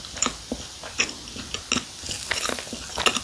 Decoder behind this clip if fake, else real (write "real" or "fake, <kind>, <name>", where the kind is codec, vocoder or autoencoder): real